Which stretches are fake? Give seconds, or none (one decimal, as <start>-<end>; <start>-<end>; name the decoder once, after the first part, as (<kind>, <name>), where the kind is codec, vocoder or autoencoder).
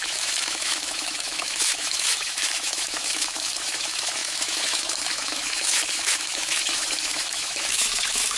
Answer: 0.0-8.4 (autoencoder, DAC-VAE)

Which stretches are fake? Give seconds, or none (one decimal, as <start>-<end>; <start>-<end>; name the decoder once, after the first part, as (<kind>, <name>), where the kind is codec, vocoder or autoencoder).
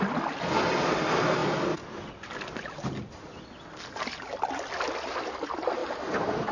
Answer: none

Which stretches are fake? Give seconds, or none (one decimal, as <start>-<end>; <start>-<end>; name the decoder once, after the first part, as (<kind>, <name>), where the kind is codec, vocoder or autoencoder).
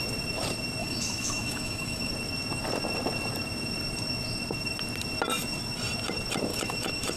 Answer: 0.8-2.1 (autoencoder, DAC-VAE); 6.5-7.2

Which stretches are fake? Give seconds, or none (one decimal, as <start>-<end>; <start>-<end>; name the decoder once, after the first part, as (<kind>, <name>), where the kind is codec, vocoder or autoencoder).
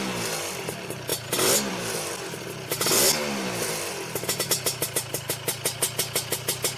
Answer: none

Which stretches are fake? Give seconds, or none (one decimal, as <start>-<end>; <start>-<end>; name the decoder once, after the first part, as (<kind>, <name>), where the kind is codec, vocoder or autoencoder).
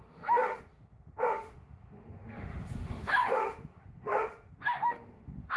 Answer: 0.0-5.6 (autoencoder, DAC-VAE)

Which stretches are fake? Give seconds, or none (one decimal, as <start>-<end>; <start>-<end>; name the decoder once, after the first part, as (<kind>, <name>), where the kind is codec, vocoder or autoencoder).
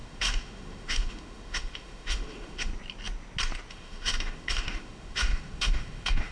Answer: 0.0-2.7 (autoencoder, DAC-VAE); 3.7-6.3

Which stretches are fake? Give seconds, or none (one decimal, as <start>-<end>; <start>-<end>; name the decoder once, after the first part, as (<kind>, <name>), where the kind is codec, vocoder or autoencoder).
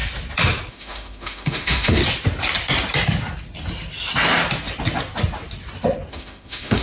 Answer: 0.7-2.0 (autoencoder, DAC-VAE); 6.1-6.8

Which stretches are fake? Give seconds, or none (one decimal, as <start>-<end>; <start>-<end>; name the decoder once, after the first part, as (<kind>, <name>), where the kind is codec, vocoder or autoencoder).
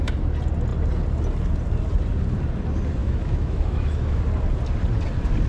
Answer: 3.0-4.2 (autoencoder, DAC-VAE)